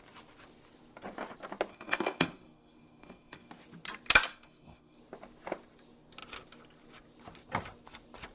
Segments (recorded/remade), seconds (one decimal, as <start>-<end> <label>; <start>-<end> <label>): 0.0-1.7 recorded; 1.7-3.5 remade; 3.5-4.3 recorded; 4.3-5.0 remade; 5.0-8.3 recorded